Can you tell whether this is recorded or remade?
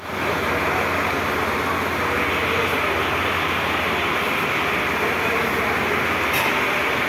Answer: recorded